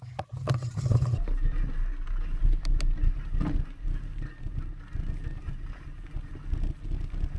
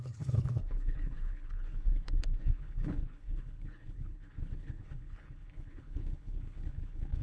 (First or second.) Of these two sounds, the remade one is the second